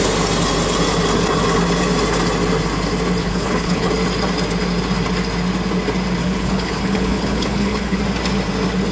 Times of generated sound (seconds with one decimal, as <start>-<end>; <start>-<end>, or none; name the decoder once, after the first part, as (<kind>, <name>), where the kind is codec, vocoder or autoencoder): 3.2-3.9 (codec, HILCodec); 6.2-8.0